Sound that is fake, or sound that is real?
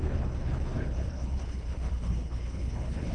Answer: fake